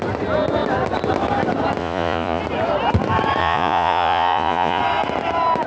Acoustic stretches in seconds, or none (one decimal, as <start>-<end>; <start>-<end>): 0.0-1.8; 2.4-3.4; 4.8-5.7